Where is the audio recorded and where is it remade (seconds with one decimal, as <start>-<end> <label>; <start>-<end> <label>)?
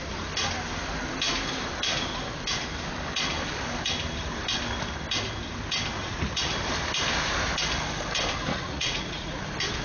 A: 0.0-6.0 recorded; 6.0-6.5 remade; 6.5-8.5 recorded; 8.5-9.3 remade; 9.3-9.8 recorded